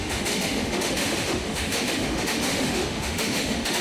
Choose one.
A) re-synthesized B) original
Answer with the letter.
A